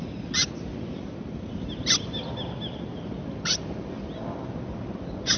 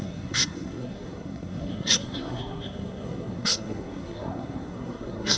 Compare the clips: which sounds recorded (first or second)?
first